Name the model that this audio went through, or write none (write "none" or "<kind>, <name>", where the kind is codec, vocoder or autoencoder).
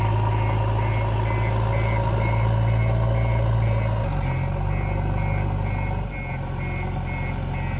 none